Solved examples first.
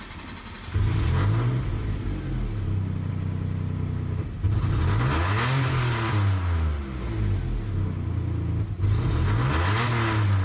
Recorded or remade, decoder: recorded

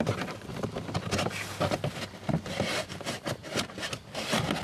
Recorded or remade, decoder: recorded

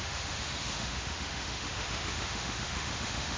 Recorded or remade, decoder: remade, autoencoder, DAC-VAE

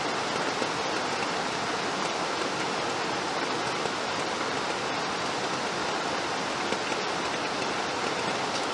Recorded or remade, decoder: recorded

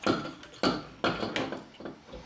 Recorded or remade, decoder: recorded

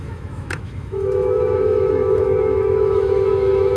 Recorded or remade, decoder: remade, autoencoder, DAC-VAE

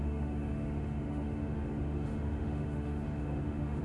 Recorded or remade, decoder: remade, autoencoder, DAC-VAE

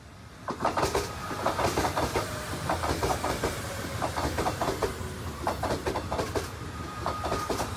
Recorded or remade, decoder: recorded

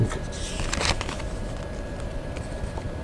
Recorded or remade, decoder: recorded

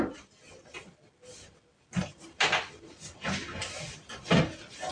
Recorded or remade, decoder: recorded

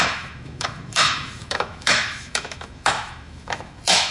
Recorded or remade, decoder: remade, autoencoder, DAC-VAE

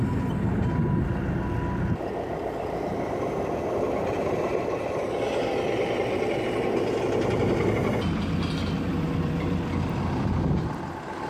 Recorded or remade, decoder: recorded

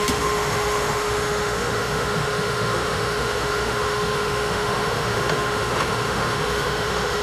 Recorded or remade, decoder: remade, autoencoder, DAC-VAE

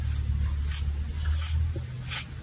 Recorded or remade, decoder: recorded